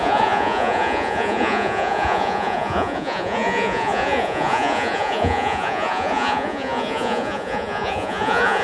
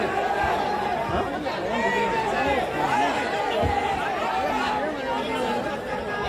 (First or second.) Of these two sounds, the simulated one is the first